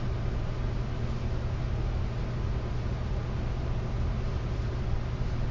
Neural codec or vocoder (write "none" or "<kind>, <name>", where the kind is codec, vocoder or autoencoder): none